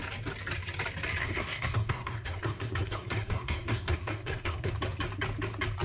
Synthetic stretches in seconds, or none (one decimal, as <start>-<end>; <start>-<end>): 1.2-4.7